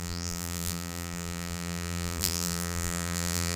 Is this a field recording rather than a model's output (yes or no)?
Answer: no